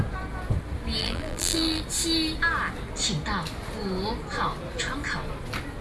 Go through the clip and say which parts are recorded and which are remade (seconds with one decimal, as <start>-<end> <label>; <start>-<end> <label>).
0.0-1.0 recorded; 1.0-1.8 remade; 1.8-5.8 recorded